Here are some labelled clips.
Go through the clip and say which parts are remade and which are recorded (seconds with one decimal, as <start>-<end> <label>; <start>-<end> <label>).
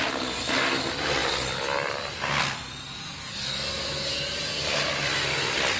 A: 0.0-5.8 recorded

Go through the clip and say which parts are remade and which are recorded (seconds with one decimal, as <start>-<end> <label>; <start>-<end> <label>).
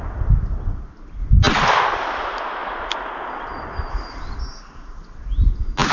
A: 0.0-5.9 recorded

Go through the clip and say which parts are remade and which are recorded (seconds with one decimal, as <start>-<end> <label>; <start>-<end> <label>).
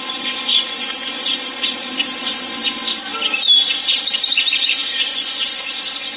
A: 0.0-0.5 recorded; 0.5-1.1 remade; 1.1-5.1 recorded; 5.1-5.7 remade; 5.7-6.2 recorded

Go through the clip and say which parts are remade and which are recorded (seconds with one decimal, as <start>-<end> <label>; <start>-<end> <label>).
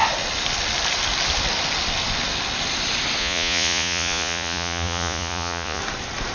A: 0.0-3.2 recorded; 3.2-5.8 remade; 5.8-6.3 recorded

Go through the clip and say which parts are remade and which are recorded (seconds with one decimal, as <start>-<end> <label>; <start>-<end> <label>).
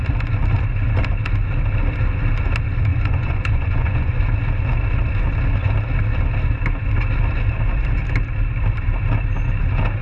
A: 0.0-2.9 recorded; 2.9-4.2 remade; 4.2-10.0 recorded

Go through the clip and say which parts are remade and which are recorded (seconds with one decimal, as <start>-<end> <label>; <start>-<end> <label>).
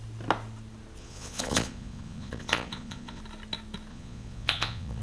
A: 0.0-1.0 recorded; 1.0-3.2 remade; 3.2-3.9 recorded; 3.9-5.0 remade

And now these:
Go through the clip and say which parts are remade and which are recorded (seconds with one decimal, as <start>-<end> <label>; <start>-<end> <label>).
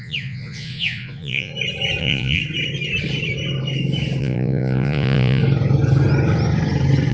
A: 0.0-1.5 remade; 1.5-2.0 recorded; 2.0-2.4 remade; 2.4-4.2 recorded; 4.2-5.4 remade; 5.4-7.1 recorded